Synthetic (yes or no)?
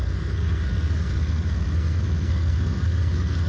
yes